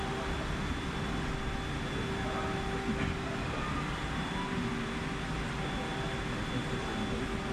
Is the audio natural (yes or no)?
yes